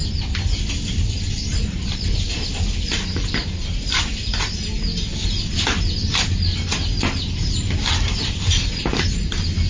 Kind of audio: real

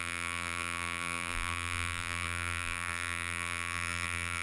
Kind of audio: fake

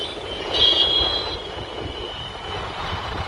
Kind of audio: fake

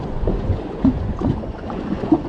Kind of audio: fake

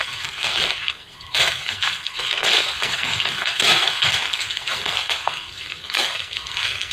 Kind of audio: fake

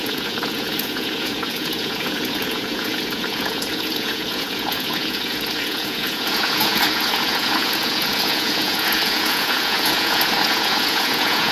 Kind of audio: fake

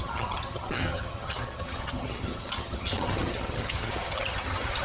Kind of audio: fake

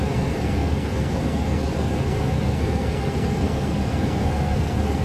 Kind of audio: fake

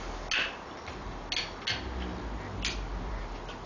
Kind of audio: real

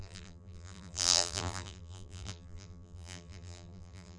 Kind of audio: fake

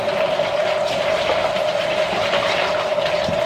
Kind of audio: real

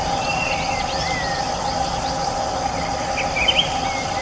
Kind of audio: real